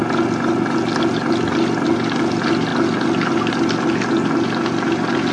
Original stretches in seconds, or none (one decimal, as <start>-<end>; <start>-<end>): 0.0-5.3